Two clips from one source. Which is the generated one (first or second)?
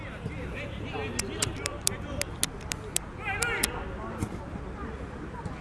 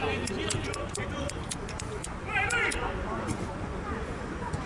second